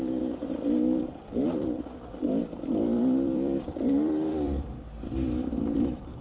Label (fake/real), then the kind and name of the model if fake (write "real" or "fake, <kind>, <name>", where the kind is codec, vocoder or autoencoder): fake, vocoder, BigVGAN v2